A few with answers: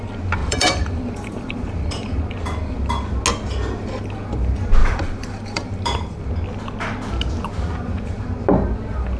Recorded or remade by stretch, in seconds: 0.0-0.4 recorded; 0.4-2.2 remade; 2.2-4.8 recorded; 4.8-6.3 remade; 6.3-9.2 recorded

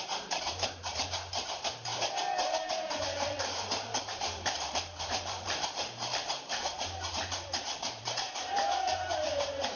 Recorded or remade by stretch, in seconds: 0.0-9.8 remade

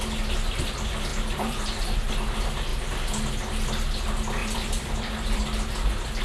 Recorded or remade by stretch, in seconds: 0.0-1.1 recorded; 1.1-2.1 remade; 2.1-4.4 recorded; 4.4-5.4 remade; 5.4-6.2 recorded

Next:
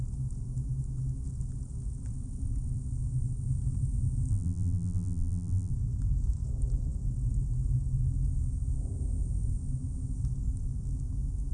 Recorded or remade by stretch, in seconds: 0.0-4.3 recorded; 4.3-5.7 remade; 5.7-11.5 recorded